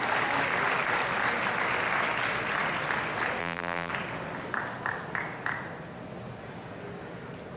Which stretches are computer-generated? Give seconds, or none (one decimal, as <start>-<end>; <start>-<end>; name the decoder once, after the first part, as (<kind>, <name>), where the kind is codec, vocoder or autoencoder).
3.4-3.9 (vocoder, BigVGAN v2)